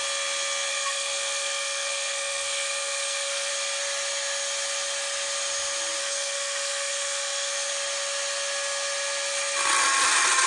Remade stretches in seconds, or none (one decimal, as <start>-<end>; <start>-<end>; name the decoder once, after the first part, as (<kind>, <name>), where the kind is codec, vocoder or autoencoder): 0.7-3.5 (codec, SNAC); 6.0-7.7